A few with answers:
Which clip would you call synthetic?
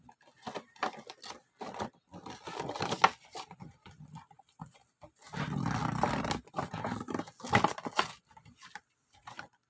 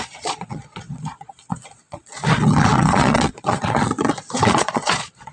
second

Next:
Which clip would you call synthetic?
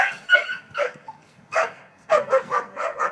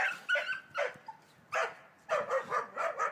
first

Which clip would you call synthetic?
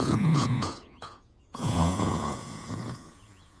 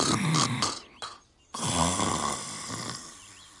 first